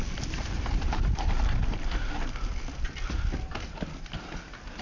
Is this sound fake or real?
real